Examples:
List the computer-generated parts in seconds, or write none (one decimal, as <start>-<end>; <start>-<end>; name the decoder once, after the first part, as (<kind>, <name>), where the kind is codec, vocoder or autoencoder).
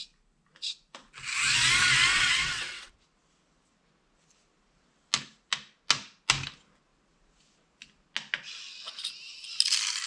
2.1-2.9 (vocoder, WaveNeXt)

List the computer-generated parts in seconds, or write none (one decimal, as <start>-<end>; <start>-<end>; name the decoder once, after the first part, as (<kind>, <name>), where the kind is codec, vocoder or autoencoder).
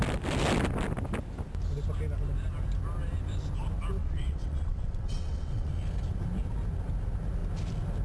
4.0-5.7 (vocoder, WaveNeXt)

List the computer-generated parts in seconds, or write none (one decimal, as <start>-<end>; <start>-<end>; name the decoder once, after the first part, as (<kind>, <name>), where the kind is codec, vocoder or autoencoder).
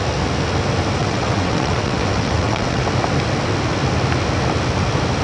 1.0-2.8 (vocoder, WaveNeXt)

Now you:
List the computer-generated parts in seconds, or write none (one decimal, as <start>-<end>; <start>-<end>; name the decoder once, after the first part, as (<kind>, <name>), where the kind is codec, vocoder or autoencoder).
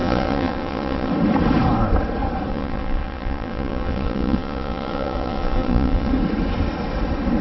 0.0-1.1 (vocoder, WaveNeXt); 2.5-6.1